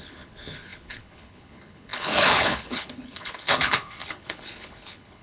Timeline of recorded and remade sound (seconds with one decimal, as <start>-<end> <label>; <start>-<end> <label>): 0.0-5.2 remade